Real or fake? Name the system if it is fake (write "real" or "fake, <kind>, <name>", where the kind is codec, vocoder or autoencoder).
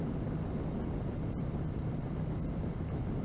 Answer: real